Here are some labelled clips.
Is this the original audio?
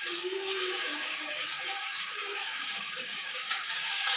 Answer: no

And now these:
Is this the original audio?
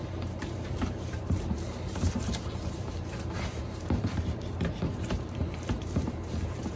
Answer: no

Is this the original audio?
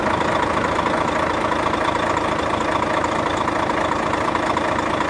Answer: yes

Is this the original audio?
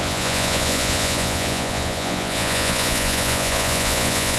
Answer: no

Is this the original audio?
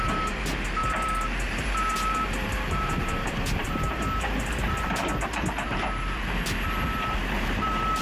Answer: no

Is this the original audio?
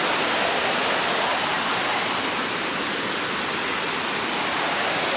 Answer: yes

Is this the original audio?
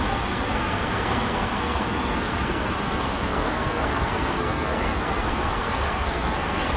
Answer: no